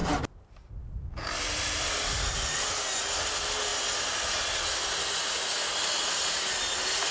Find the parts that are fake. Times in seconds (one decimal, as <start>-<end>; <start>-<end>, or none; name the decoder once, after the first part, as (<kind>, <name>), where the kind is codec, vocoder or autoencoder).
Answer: none